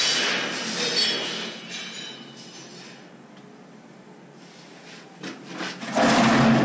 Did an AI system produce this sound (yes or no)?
no